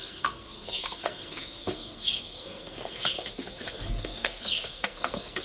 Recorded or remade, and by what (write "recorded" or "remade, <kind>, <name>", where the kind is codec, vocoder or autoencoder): remade, codec, SNAC